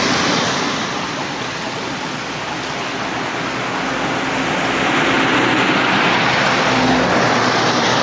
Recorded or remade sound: recorded